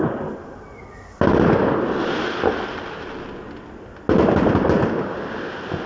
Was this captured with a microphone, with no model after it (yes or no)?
yes